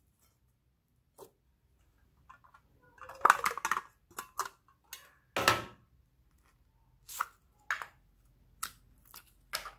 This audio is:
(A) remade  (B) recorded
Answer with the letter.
B